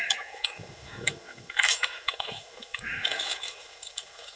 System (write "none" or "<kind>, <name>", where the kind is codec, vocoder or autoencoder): autoencoder, DAC-VAE